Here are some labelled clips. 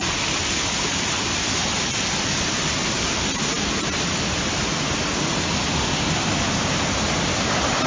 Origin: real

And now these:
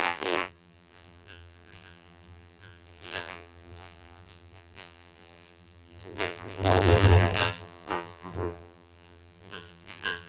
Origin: fake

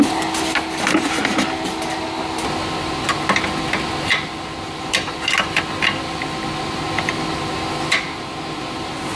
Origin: real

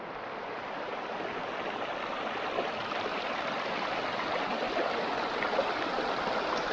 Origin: real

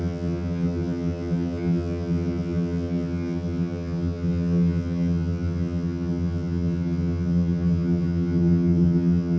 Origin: fake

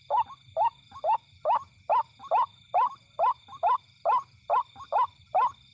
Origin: real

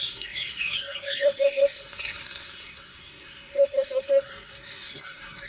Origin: fake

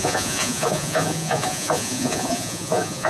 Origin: fake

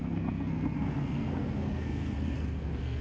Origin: fake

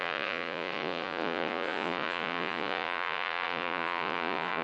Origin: fake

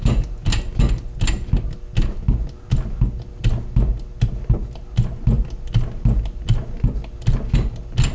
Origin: real